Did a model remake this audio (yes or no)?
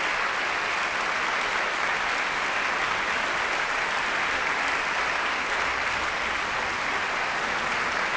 no